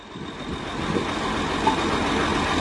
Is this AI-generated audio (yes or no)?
no